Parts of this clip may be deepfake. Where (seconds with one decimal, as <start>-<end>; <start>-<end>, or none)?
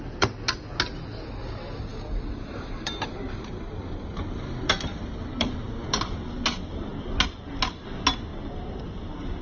1.9-6.4; 8.3-9.4